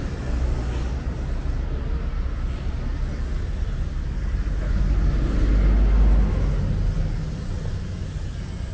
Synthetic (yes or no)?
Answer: no